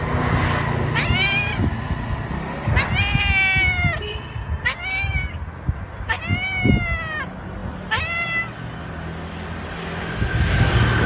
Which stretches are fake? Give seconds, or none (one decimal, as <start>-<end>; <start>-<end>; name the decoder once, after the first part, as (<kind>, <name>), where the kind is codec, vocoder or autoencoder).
none